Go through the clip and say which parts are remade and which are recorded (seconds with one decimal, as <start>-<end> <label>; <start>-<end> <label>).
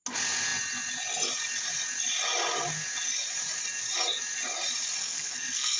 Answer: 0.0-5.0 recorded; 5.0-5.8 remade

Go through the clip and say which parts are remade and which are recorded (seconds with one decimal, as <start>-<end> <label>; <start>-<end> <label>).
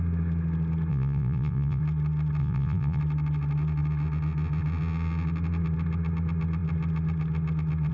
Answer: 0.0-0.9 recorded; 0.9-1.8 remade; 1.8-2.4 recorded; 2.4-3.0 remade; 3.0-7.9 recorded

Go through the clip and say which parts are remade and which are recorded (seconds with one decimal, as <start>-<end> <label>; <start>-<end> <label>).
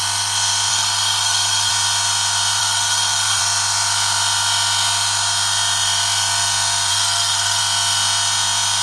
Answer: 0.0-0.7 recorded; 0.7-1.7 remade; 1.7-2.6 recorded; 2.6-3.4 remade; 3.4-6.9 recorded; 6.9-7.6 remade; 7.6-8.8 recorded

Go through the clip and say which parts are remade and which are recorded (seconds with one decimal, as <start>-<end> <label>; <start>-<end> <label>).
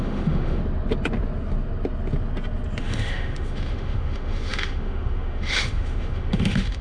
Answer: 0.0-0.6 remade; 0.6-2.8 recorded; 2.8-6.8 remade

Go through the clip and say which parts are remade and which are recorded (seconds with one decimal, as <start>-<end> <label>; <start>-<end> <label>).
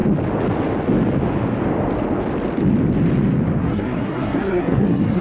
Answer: 0.0-3.6 recorded; 3.6-5.2 remade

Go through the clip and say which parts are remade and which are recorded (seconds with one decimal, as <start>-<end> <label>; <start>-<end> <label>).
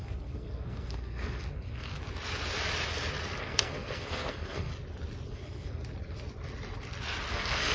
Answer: 0.0-1.9 remade; 1.9-3.4 recorded; 3.4-4.7 remade; 4.7-5.3 recorded; 5.3-5.8 remade; 5.8-7.3 recorded; 7.3-7.7 remade